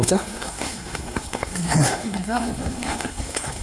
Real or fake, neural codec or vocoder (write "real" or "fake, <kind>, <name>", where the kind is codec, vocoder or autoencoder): fake, codec, SNAC